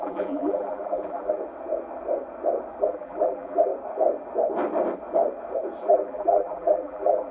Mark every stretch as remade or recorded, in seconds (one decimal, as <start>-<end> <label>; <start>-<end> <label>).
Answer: 0.0-1.4 remade; 1.4-2.8 recorded; 2.8-3.7 remade; 3.7-5.8 recorded; 5.8-7.3 remade